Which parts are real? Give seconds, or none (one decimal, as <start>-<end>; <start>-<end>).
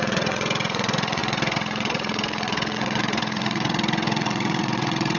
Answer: none